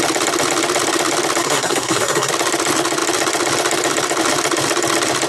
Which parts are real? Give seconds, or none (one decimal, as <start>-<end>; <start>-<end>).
0.0-1.4; 2.3-5.3